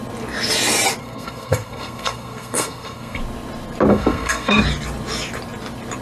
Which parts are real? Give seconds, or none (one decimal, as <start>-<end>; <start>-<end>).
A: 0.0-1.0; 3.2-3.9; 4.6-6.0

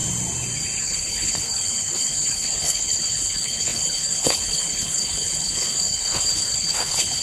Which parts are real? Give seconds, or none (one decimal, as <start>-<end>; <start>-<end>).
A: 0.0-0.8

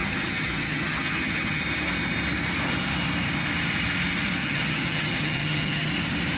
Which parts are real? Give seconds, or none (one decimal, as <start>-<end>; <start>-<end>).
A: 1.6-4.4; 5.9-6.4

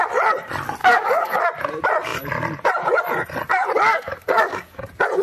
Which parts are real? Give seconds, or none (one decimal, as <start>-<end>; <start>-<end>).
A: 0.0-0.8; 1.4-3.9; 4.8-5.2

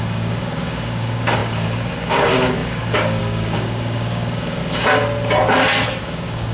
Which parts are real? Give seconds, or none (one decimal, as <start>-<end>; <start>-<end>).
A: 4.6-6.0